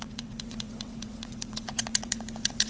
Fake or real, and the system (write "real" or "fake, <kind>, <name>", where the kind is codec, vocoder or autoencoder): fake, vocoder, WaveNeXt